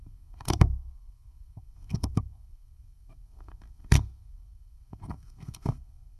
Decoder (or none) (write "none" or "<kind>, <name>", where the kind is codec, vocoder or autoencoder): codec, SNAC